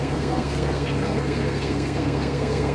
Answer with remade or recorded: remade